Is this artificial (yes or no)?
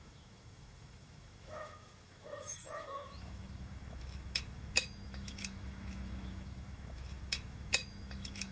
yes